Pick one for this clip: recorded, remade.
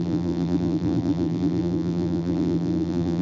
remade